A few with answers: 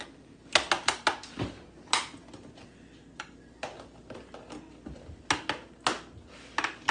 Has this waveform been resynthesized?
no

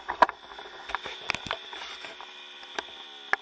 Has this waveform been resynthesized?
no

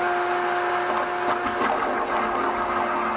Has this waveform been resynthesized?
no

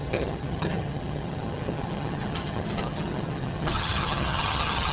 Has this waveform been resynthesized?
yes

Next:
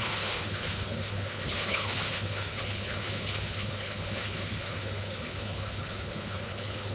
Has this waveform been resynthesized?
yes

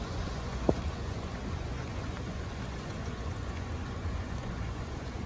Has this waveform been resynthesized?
yes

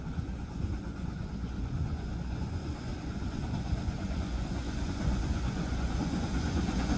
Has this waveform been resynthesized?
yes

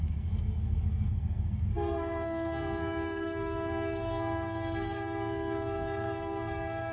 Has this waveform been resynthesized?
yes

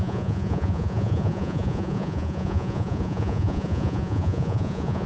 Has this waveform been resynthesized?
yes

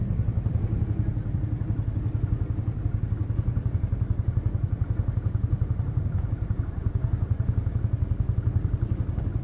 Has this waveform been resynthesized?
no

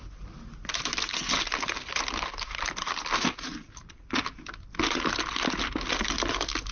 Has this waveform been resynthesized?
no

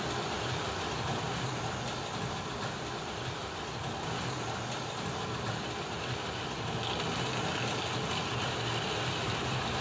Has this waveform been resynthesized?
no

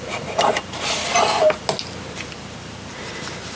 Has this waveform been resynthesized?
no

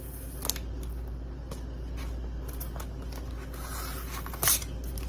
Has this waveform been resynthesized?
no